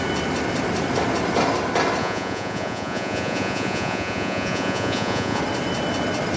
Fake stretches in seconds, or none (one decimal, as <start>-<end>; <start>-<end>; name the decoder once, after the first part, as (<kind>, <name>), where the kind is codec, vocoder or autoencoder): 2.0-5.4 (vocoder, Vocos)